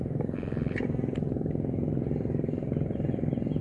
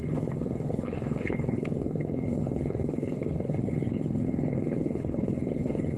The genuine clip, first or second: first